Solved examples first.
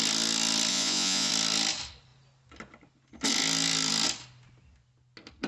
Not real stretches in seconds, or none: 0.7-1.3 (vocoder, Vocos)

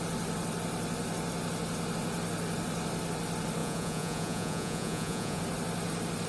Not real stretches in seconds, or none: 3.6-5.4 (vocoder, Vocos)

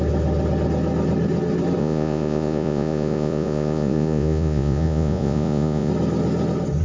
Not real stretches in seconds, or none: 1.8-5.9 (vocoder, Vocos)

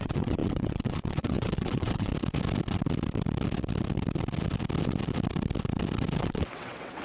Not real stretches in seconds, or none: 0.0-2.1 (vocoder, WaveNeXt); 6.2-7.0

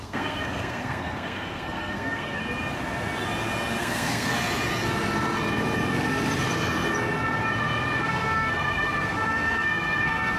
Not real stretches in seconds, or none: 0.0-2.4 (codec, SNAC); 3.8-4.3; 8.0-10.4

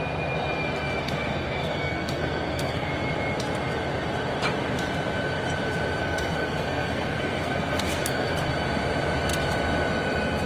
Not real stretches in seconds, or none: 1.0-2.9 (codec, SNAC); 6.0-8.5

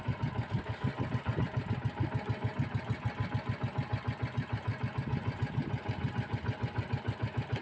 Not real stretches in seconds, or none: 0.9-1.7 (vocoder, BigVGAN v2)

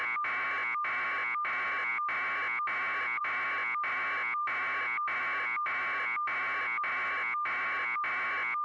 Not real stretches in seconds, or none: none